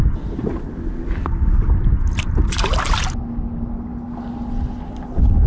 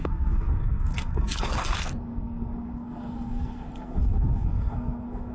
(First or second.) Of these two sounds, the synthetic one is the second